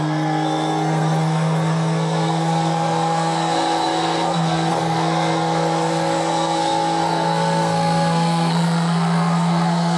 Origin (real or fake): fake